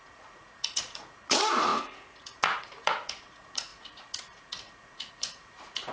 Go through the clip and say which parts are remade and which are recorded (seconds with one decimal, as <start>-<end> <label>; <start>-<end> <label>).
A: 0.0-5.9 remade